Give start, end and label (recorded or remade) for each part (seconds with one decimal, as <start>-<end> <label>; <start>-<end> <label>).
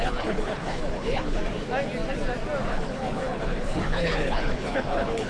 0.0-1.4 remade; 1.4-2.7 recorded; 2.7-5.3 remade